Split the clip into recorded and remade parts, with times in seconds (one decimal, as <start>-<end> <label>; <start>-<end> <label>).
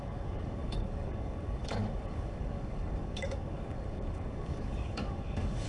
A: 0.0-5.7 remade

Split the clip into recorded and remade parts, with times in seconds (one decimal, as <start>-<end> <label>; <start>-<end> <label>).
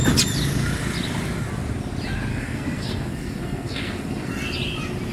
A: 0.0-2.3 recorded; 2.3-4.3 remade; 4.3-5.1 recorded